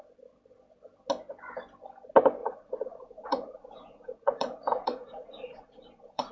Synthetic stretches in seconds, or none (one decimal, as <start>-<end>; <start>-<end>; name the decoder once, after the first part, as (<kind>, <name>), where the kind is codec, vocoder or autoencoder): 2.4-6.3 (vocoder, Vocos)